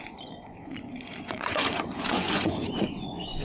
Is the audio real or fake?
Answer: fake